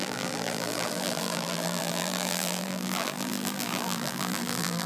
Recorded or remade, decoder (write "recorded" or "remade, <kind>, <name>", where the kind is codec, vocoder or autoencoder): remade, vocoder, BigVGAN v2